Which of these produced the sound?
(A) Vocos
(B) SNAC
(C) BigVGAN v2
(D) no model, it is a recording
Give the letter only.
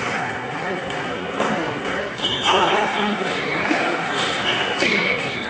B